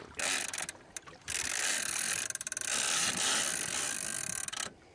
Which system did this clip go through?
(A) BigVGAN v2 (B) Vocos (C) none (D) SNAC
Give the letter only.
C